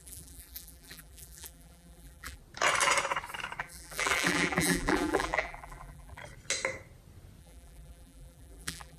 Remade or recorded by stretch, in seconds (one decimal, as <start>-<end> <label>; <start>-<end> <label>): 0.0-2.4 remade; 2.4-3.6 recorded; 3.6-6.2 remade; 6.2-7.4 recorded; 7.4-9.0 remade